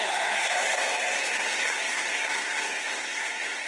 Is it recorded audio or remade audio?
remade